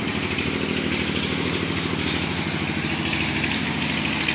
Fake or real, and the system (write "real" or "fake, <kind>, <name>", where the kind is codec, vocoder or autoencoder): real